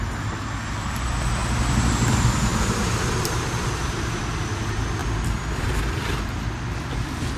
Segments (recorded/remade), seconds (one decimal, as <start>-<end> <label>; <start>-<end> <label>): 0.0-2.5 recorded; 2.5-4.2 remade; 4.2-7.4 recorded